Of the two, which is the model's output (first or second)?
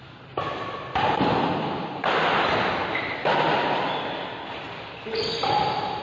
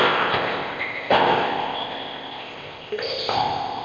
second